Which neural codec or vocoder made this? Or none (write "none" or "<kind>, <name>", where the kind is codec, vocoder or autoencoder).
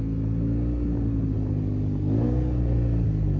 none